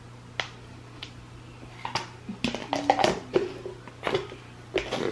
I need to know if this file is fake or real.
real